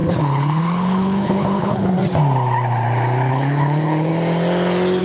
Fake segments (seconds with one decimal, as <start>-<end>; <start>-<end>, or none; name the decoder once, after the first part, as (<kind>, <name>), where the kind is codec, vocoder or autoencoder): 0.0-2.0 (codec, HILCodec); 3.3-4.1